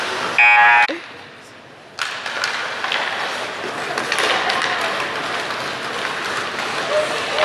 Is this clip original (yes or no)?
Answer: yes